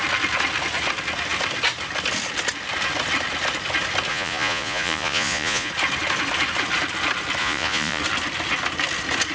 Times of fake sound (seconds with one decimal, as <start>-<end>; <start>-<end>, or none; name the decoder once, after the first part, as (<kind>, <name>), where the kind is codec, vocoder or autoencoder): 4.1-5.7 (vocoder, Vocos); 7.4-8.0